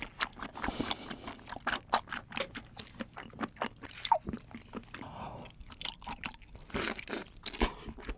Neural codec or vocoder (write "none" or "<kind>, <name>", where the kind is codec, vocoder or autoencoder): none